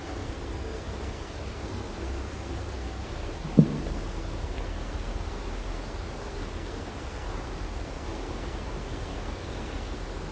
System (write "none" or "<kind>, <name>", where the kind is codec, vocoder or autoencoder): codec, SNAC